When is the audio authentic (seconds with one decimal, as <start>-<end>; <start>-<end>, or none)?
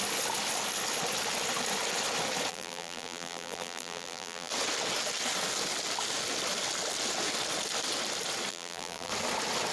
0.0-2.5; 4.5-8.5; 9.1-9.7